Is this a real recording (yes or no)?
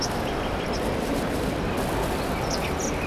yes